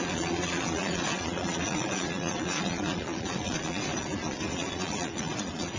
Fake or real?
fake